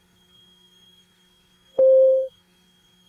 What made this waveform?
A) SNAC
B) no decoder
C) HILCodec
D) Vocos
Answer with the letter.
A